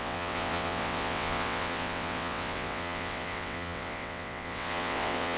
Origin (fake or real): fake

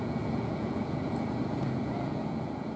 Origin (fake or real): fake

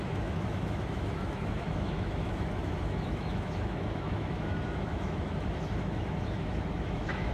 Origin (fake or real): fake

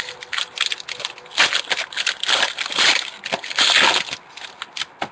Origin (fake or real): real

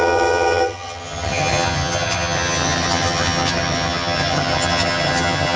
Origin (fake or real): fake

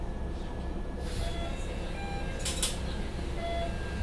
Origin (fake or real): real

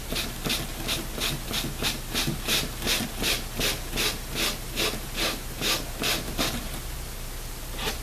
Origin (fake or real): real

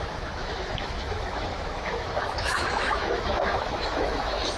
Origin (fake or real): fake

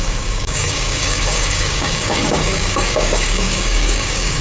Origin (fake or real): fake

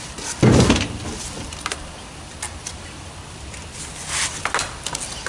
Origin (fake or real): real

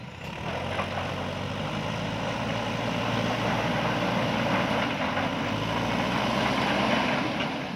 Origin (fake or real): real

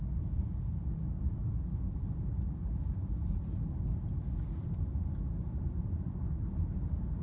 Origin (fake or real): real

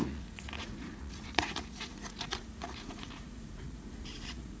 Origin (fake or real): fake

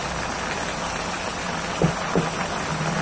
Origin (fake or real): real